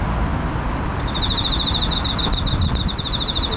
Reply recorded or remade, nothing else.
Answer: recorded